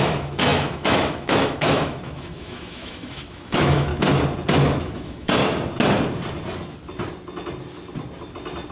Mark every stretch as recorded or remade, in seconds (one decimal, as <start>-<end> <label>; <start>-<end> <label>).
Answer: 0.0-3.9 remade; 3.9-4.8 recorded; 4.8-5.4 remade; 5.4-8.7 recorded